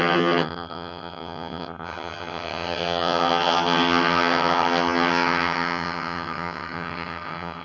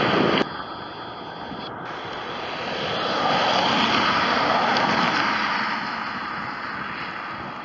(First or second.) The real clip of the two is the second